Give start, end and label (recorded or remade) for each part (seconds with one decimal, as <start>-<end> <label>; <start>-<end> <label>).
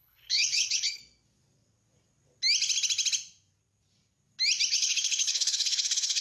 0.0-1.0 remade; 1.0-4.7 recorded; 4.7-6.2 remade